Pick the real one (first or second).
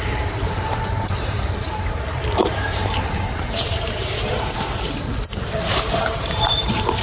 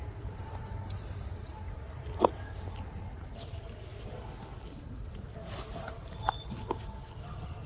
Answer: second